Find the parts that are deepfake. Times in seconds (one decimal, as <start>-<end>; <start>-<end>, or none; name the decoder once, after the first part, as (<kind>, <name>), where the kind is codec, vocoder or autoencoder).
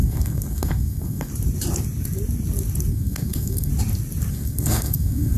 0.0-1.3 (codec, SNAC); 2.9-3.7; 4.3-5.4